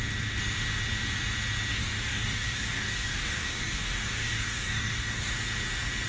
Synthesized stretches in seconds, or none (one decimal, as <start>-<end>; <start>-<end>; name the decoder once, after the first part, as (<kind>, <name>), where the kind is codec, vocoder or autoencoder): 1.7-5.3 (codec, DAC)